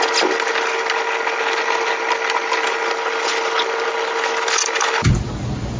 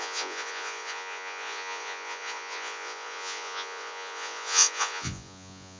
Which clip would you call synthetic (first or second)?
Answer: second